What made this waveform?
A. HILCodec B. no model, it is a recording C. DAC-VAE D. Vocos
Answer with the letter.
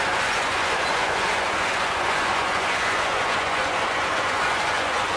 D